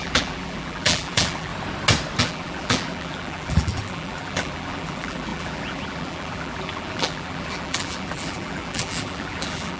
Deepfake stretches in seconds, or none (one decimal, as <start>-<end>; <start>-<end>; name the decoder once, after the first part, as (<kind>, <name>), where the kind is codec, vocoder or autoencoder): 0.0-1.5 (vocoder, BigVGAN v2); 2.2-9.8